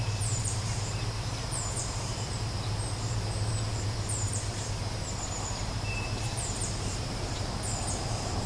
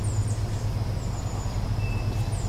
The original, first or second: second